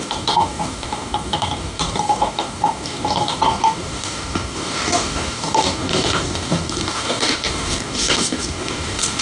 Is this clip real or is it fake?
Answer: fake